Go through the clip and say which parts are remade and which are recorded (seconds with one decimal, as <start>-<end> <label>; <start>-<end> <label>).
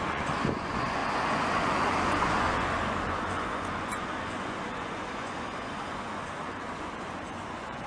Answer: 0.0-7.9 remade